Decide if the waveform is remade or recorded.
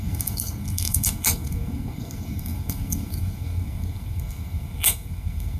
remade